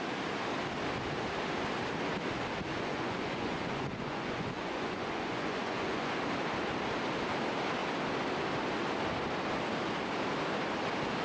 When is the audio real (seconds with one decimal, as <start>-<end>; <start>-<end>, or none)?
0.0-2.7; 6.1-11.2